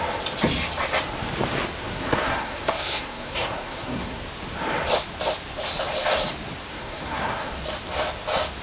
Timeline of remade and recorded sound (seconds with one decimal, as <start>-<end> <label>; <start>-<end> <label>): 0.0-1.8 recorded; 1.8-4.2 remade; 4.2-6.7 recorded; 6.7-7.5 remade; 7.5-8.6 recorded